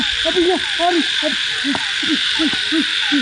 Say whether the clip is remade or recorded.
recorded